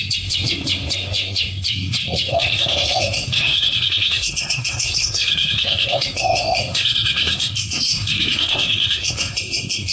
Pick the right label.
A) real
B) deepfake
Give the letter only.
B